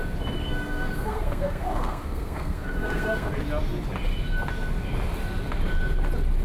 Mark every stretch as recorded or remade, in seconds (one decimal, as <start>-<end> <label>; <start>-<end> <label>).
0.0-0.4 recorded; 0.4-3.3 remade; 3.3-6.4 recorded